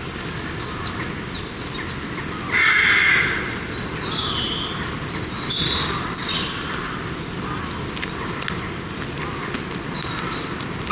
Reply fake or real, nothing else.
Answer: real